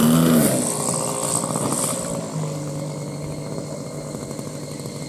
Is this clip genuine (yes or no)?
yes